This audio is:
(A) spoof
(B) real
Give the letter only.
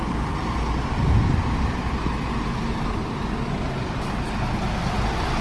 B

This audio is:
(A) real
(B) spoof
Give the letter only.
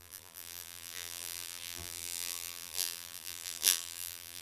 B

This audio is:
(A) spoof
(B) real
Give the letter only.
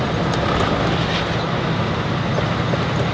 B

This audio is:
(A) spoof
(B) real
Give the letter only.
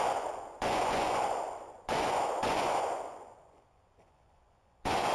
A